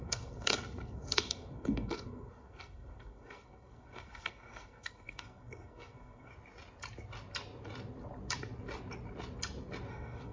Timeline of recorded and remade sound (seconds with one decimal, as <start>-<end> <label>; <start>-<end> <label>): 0.0-6.3 remade; 6.3-9.9 recorded; 9.9-10.3 remade